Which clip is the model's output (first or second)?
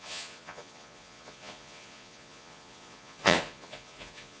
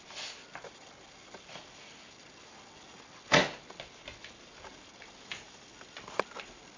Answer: first